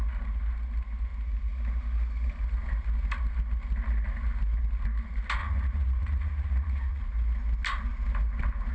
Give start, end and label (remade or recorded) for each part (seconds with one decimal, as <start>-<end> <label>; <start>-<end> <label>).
0.0-5.4 recorded; 5.4-7.0 remade; 7.0-8.7 recorded